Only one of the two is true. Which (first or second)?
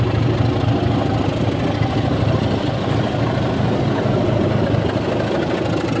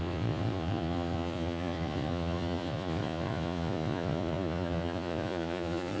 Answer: first